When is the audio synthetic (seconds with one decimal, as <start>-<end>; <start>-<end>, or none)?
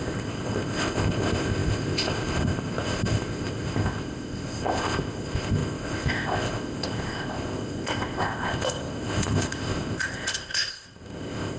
0.0-11.6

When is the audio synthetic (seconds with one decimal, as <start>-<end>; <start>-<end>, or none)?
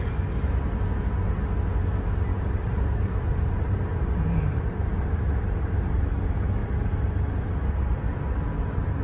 2.3-6.0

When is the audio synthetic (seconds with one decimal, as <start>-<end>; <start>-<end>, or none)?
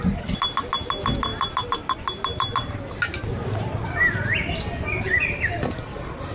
none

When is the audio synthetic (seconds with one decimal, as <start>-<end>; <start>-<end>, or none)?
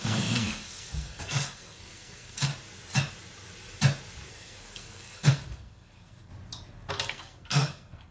0.0-2.5; 4.3-6.3; 6.9-8.1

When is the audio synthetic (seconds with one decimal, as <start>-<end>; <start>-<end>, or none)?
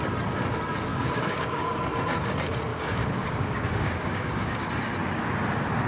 0.9-1.8; 2.7-4.7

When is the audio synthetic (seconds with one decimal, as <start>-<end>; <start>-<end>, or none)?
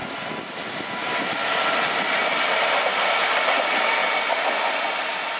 none